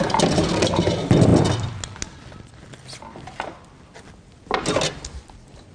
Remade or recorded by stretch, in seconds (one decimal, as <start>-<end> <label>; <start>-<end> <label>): 0.0-5.7 recorded